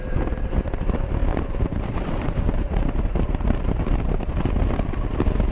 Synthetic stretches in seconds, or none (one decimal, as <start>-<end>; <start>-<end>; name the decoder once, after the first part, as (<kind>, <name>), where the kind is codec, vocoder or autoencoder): 1.2-4.5 (vocoder, BigVGAN v2)